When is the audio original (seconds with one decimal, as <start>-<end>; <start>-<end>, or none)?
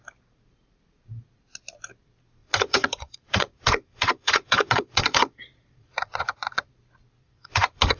0.0-2.4; 6.7-7.2